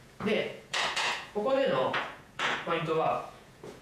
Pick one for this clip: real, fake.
fake